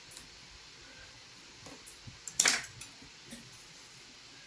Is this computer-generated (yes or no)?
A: no